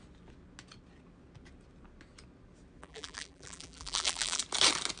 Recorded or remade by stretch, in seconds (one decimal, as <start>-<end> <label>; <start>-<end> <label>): 0.0-2.8 recorded; 2.8-4.4 remade; 4.4-5.0 recorded